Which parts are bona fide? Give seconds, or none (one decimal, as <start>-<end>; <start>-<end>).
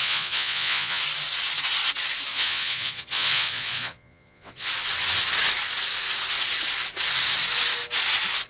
1.0-2.3; 4.7-8.5